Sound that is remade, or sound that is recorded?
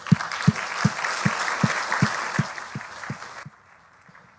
recorded